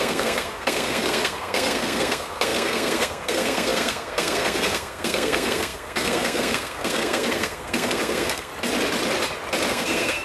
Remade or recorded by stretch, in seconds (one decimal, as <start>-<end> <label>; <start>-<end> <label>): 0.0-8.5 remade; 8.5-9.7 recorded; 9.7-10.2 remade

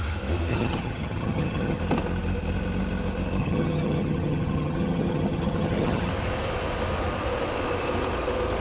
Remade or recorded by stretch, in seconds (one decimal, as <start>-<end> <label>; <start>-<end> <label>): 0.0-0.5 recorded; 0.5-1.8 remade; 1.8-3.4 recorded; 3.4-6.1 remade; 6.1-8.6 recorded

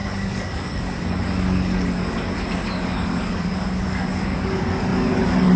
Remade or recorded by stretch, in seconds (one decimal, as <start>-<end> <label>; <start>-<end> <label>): 0.0-5.6 remade

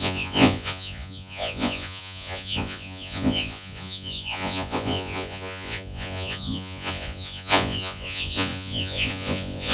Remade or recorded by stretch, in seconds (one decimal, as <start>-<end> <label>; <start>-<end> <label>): 0.0-9.7 remade